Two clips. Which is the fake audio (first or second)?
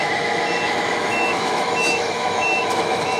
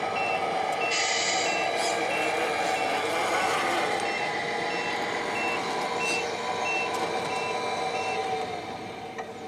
first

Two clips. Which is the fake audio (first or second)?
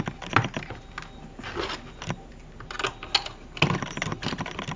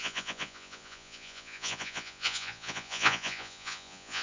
second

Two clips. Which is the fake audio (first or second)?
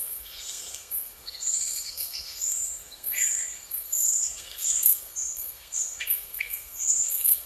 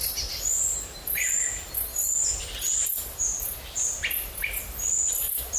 first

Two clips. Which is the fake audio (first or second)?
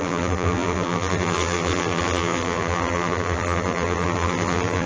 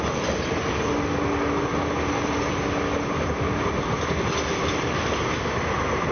first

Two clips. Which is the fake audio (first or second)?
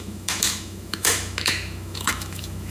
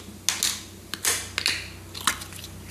first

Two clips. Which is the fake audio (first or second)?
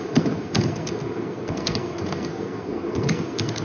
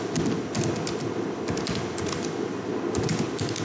first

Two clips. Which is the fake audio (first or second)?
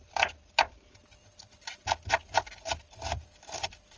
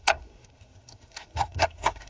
second